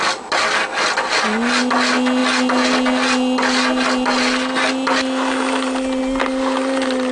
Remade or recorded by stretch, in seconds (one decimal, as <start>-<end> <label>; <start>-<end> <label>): 0.0-7.1 recorded